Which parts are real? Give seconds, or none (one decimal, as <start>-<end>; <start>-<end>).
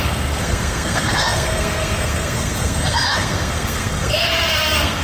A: none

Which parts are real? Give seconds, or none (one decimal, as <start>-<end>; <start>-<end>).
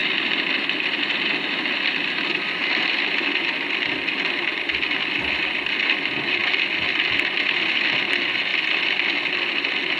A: 0.0-10.0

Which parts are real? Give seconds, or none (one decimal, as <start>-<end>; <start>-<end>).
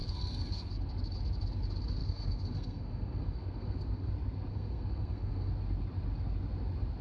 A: 0.7-2.0; 4.1-4.5; 5.5-7.0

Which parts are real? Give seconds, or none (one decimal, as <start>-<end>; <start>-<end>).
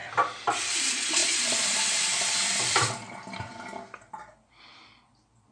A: 0.0-5.5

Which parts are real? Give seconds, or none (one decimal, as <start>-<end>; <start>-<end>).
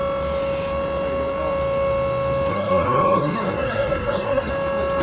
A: 0.0-2.5; 4.5-5.0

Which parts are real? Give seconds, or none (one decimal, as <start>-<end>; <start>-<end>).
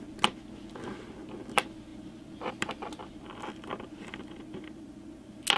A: 0.0-5.6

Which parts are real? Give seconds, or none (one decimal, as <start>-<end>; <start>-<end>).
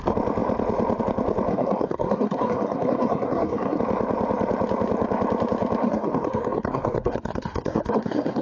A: 0.0-1.5; 3.8-5.8